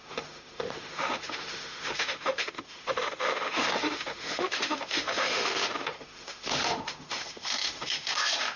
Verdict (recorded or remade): remade